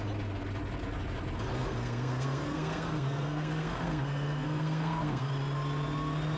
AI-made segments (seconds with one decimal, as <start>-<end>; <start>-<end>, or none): 1.5-5.3